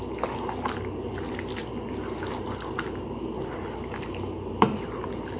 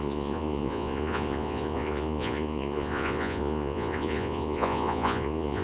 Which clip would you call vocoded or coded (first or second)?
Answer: second